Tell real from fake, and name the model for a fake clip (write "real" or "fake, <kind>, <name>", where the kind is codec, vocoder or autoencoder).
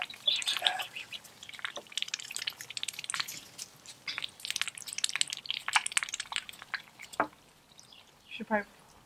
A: real